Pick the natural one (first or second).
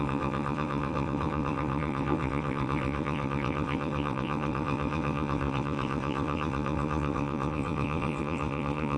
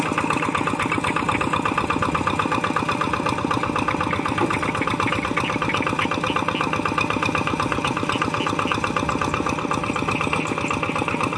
second